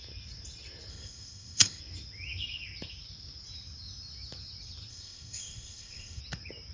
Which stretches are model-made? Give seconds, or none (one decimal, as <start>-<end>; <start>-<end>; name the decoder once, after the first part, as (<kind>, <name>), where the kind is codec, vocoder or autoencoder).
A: 0.9-1.8 (codec, ZipCodec); 4.9-6.2